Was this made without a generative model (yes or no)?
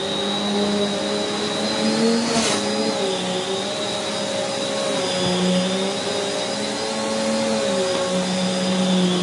yes